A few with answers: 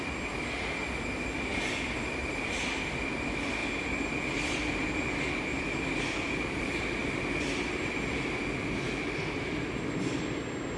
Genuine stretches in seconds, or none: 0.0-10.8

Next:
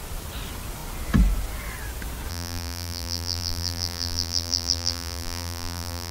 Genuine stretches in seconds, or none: 0.0-2.3

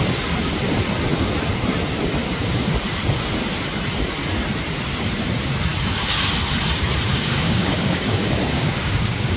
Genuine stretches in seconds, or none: 0.0-7.1

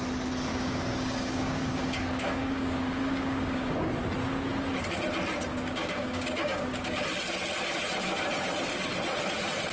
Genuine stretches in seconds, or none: 0.0-0.5; 3.8-5.5; 7.0-9.7

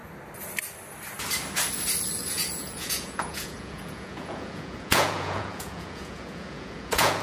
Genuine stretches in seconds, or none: 0.0-2.3

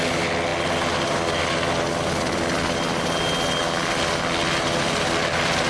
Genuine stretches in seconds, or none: 0.0-5.7